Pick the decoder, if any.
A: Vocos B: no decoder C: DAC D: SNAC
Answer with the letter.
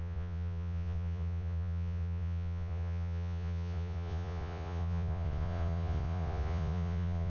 A